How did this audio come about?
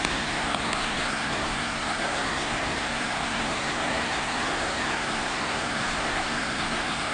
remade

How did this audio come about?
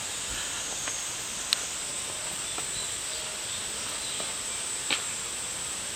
recorded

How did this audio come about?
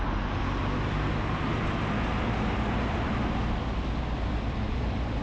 recorded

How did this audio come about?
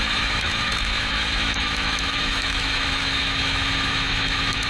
remade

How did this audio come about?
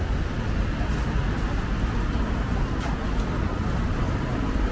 recorded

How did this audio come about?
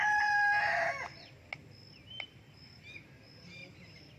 recorded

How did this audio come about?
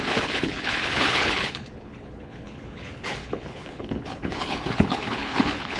remade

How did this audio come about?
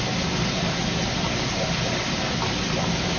recorded